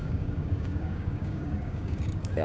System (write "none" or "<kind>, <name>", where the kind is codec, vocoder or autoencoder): codec, DAC